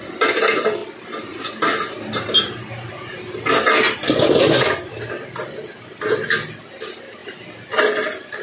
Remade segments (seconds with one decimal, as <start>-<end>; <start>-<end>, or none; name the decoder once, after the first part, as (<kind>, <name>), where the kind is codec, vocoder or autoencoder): none